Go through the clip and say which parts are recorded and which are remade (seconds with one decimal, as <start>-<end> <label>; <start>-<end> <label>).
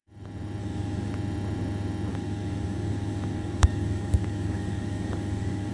0.0-0.6 recorded; 0.6-1.1 remade; 1.1-2.1 recorded; 2.1-5.7 remade